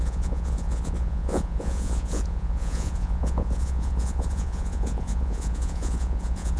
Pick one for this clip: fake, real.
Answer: fake